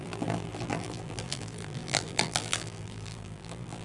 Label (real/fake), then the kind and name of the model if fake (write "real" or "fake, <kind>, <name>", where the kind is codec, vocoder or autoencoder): fake, vocoder, BigVGAN v2